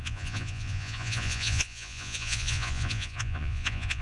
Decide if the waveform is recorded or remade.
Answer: remade